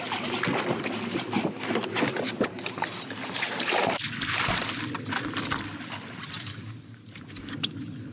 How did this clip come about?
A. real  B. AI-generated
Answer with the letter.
A